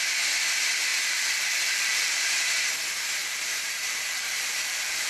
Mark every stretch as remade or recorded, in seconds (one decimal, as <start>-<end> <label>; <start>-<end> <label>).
0.0-0.9 recorded; 0.9-2.1 remade; 2.1-3.2 recorded; 3.2-5.1 remade